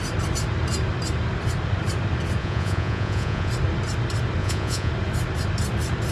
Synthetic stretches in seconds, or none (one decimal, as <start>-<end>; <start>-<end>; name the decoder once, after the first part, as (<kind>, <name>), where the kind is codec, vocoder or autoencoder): 2.4-3.5 (vocoder, Vocos); 4.4-4.9